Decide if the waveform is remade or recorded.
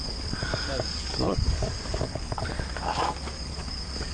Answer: remade